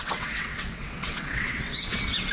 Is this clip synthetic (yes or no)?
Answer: yes